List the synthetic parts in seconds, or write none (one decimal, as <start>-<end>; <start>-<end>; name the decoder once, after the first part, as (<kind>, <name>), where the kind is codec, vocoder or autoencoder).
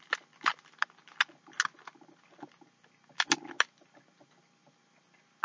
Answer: none